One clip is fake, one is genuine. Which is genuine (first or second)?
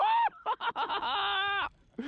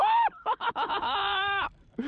first